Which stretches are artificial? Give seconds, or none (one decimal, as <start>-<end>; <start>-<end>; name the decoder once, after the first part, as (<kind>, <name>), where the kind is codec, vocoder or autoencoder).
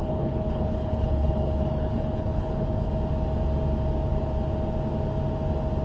0.0-2.9 (codec, HILCodec)